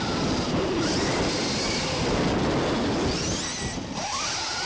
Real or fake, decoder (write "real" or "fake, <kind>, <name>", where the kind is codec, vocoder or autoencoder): real